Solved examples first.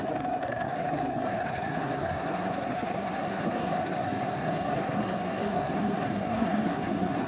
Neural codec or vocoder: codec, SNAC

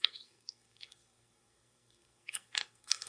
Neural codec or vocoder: codec, SNAC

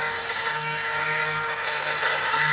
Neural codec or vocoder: codec, SNAC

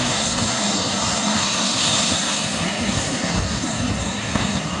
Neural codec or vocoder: codec, SNAC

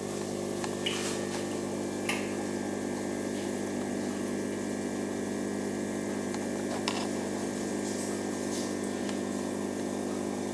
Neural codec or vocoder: none